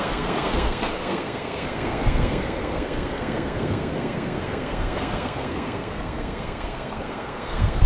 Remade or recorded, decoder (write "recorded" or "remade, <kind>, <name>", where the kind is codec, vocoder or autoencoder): remade, codec, SNAC